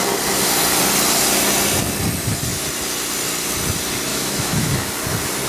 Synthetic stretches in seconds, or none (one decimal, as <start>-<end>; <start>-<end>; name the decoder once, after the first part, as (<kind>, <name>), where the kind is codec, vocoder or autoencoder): 4.1-4.9 (autoencoder, DAC-VAE)